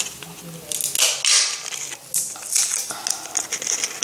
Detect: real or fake real